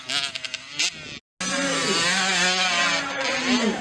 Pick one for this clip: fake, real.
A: real